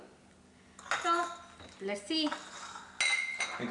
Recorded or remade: recorded